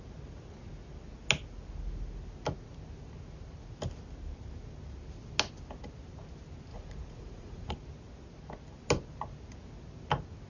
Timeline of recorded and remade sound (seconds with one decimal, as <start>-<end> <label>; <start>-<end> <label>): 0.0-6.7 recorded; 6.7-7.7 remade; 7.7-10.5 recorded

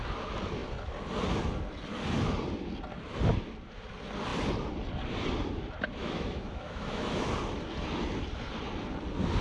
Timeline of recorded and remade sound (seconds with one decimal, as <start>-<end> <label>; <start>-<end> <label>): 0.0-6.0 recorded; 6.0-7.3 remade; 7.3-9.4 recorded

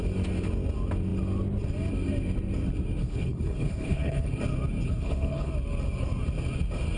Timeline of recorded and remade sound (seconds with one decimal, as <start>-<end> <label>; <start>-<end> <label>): 0.0-3.0 recorded; 3.0-4.3 remade; 4.3-4.9 recorded; 4.9-5.5 remade; 5.5-7.0 recorded

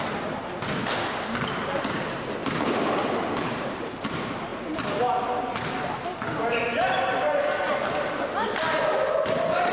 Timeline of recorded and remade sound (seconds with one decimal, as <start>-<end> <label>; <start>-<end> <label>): 0.0-2.4 recorded; 2.4-3.9 remade; 3.9-9.7 recorded

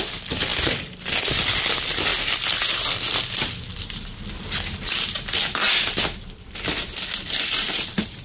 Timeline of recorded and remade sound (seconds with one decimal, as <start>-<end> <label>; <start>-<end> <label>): 0.0-0.5 remade; 0.5-1.5 recorded; 1.5-2.1 remade; 2.1-2.9 recorded; 2.9-8.2 remade

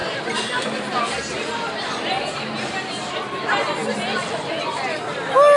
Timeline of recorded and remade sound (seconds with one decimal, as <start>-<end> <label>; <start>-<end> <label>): 0.0-5.6 recorded

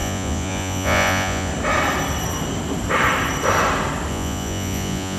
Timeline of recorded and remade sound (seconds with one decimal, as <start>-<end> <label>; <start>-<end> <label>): 0.0-1.5 remade; 1.5-4.1 recorded; 4.1-5.2 remade

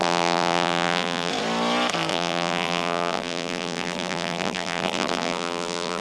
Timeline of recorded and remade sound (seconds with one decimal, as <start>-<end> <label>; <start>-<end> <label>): 0.0-1.3 remade; 1.3-2.1 recorded; 2.1-6.0 remade